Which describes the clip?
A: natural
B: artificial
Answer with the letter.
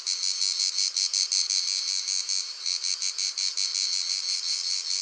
A